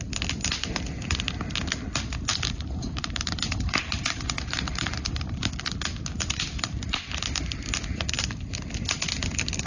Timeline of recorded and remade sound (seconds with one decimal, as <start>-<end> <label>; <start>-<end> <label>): 0.0-2.3 recorded; 2.3-5.6 remade; 5.6-9.7 recorded